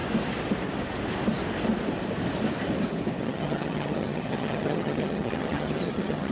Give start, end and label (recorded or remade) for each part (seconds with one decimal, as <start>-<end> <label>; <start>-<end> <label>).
0.0-3.2 recorded; 3.2-6.3 remade